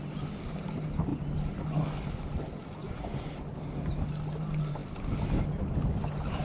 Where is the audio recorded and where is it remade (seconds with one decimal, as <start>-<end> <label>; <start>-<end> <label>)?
0.0-2.8 recorded; 2.8-3.3 remade; 3.3-6.4 recorded